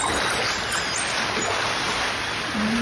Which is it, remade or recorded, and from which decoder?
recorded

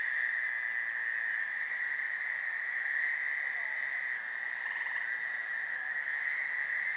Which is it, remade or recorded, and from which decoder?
recorded